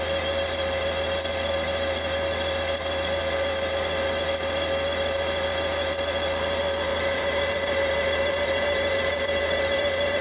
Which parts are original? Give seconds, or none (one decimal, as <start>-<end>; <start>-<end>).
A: 0.0-6.9